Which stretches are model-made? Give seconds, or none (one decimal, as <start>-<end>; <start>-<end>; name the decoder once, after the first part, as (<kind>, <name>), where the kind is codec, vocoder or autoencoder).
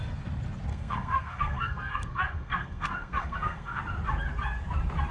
0.7-3.8 (codec, SNAC)